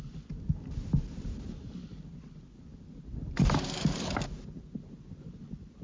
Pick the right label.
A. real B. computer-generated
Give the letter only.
A